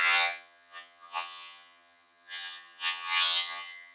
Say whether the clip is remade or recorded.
remade